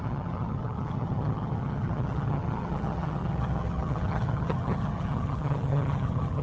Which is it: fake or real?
fake